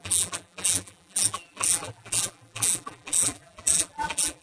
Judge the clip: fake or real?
fake